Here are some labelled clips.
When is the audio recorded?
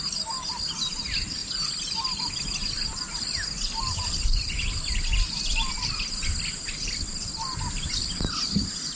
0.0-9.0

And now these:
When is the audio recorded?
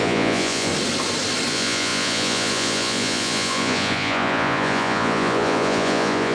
0.7-1.5